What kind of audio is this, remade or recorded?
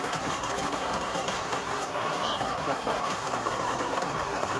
remade